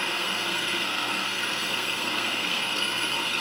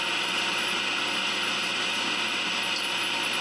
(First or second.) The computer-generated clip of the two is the first